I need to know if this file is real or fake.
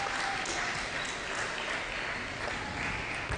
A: real